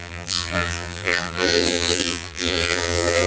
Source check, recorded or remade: remade